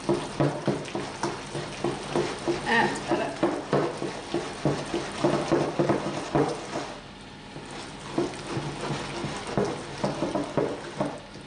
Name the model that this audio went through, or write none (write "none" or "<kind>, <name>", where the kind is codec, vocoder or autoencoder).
none